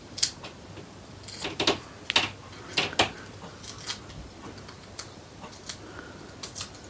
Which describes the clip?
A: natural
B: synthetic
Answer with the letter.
A